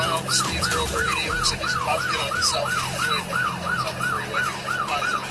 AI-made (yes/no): no